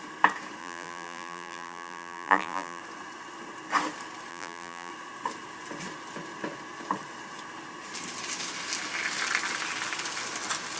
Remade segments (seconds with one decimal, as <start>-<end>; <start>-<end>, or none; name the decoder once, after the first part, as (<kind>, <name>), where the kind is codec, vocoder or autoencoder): 0.6-2.8 (vocoder, BigVGAN v2); 4.3-4.9